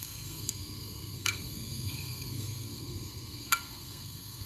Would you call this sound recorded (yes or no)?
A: no